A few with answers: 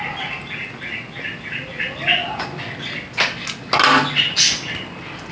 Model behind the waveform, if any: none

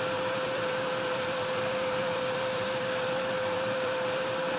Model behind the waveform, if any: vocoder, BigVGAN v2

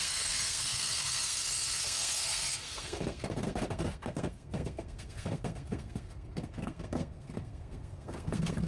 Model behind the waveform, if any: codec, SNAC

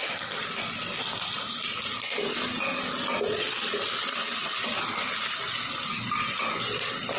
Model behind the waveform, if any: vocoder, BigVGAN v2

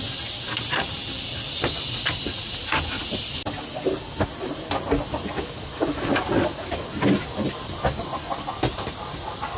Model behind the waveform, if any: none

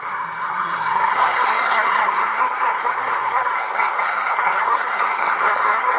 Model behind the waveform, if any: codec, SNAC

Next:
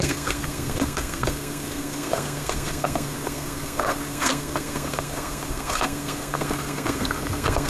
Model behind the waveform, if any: codec, SNAC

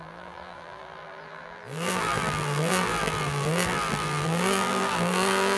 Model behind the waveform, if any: vocoder, BigVGAN v2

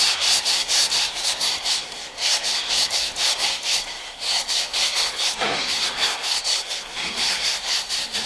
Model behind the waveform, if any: codec, SNAC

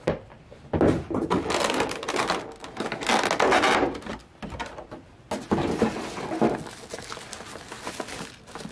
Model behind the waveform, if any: none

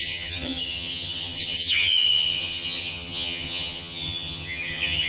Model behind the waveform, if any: vocoder, HiFi-GAN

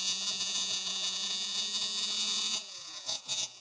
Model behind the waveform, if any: vocoder, Vocos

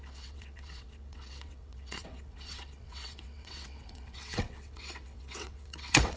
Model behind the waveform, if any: vocoder, WaveNeXt